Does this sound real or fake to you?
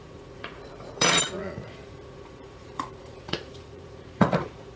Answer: fake